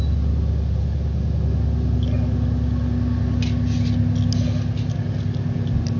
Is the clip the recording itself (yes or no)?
yes